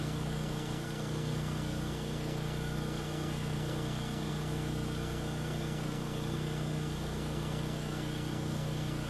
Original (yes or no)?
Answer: no